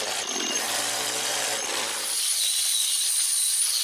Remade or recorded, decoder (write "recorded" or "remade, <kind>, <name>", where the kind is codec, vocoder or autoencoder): recorded